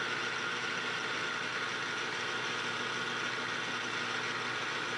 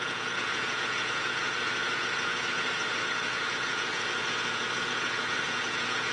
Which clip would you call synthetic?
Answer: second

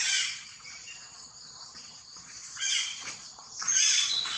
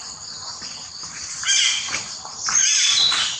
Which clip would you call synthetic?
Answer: first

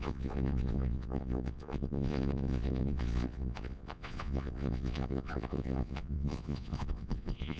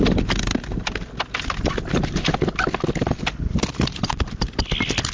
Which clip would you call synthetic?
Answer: first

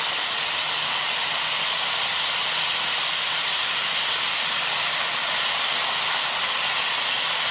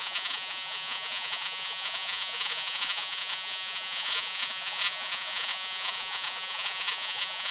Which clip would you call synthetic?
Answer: second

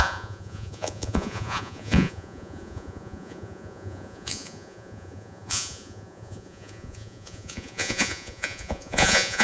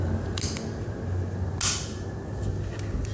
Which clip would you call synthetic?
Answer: first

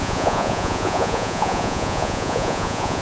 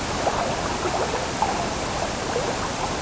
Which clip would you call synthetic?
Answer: first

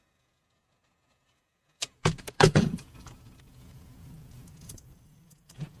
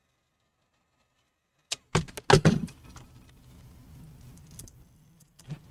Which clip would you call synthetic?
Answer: first